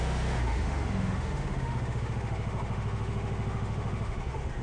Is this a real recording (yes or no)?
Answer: no